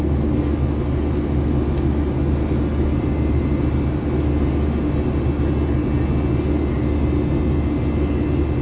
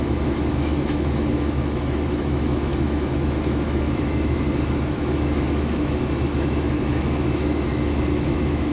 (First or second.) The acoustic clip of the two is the first